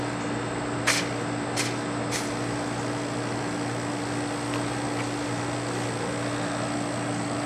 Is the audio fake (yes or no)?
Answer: no